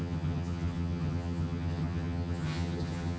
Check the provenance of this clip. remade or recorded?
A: remade